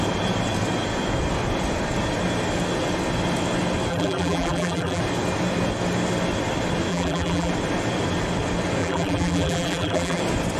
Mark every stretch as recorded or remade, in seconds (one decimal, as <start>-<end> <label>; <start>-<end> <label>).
0.0-3.9 recorded; 3.9-5.0 remade; 5.0-6.9 recorded; 6.9-7.5 remade; 7.5-8.8 recorded; 8.8-10.2 remade; 10.2-10.6 recorded